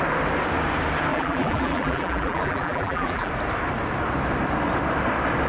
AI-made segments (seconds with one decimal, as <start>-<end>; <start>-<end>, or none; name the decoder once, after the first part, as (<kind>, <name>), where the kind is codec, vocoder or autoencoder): 1.1-3.3 (vocoder, BigVGAN v2)